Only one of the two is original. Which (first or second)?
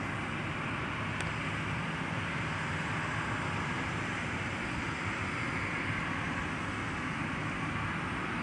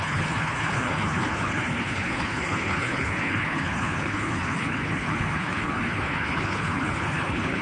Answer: first